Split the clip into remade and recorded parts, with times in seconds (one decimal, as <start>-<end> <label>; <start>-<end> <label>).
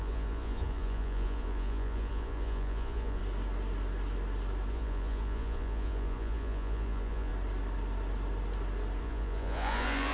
0.0-3.2 remade; 3.2-4.7 recorded; 4.7-7.3 remade; 7.3-9.0 recorded; 9.0-10.1 remade